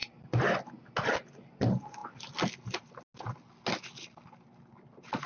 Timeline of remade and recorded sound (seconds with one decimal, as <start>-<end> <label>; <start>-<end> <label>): 0.0-5.3 recorded